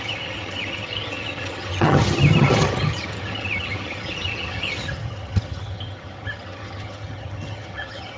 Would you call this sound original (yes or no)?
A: no